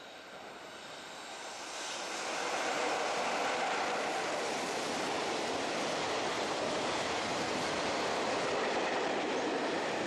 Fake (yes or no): yes